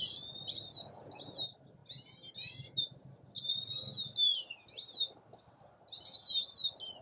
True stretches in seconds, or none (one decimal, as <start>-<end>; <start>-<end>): 0.0-7.0